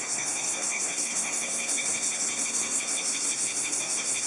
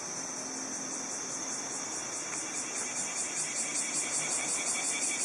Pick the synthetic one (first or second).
first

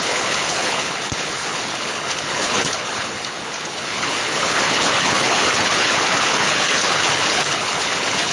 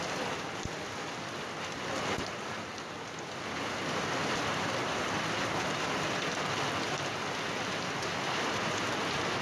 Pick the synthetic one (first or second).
first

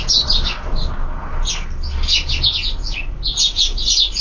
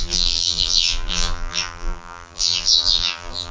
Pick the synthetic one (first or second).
second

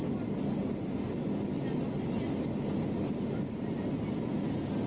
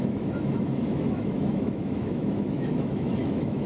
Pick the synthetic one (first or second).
second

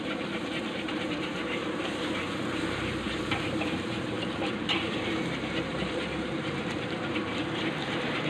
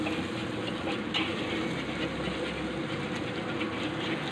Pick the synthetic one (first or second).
first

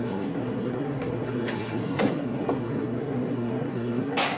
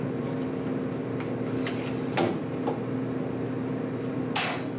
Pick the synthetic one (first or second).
first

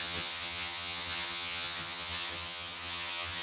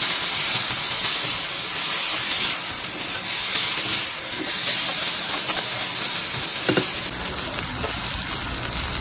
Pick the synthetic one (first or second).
first